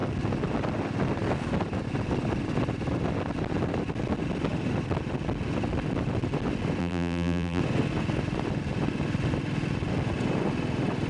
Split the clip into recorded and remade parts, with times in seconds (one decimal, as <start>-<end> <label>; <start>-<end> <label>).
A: 0.0-6.8 recorded; 6.8-7.6 remade; 7.6-11.1 recorded